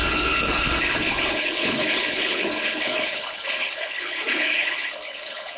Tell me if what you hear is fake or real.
fake